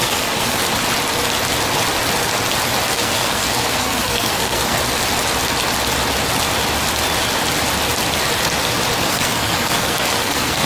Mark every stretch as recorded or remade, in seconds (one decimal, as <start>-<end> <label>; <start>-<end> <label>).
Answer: 0.0-0.6 remade; 0.6-2.9 recorded; 2.9-4.8 remade; 4.8-9.0 recorded; 9.0-10.7 remade